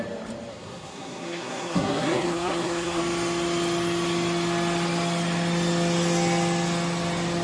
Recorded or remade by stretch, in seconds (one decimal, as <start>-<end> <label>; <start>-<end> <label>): 0.0-0.5 recorded; 0.5-3.0 remade; 3.0-7.4 recorded